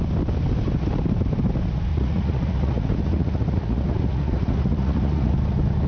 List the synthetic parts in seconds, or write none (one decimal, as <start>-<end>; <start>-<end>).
1.9-5.3